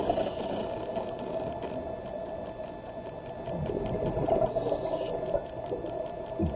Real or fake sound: real